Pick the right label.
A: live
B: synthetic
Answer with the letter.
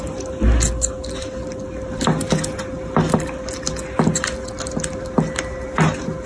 A